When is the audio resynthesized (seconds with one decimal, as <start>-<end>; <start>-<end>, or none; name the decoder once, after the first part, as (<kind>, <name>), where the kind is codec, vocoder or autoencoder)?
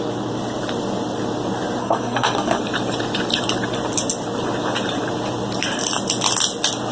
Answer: 1.8-2.6 (codec, SNAC)